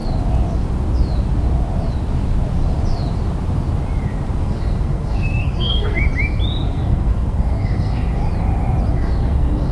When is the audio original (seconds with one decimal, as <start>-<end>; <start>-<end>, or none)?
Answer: 0.0-4.4; 6.0-6.6; 8.2-8.9